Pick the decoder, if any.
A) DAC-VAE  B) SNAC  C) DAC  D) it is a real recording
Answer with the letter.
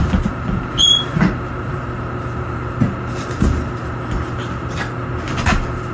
D